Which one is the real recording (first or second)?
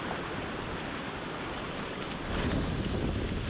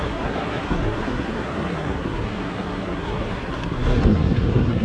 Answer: first